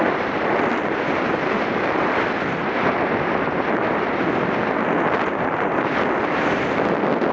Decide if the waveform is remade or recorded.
recorded